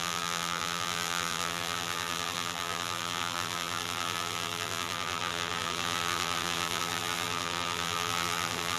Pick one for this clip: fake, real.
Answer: fake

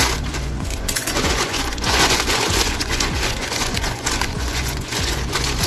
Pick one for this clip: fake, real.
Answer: fake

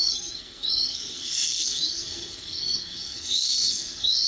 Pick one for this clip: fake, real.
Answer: fake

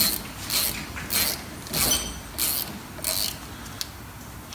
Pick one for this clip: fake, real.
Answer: real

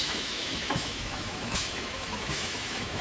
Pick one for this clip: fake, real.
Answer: fake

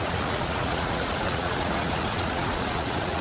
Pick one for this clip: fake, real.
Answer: fake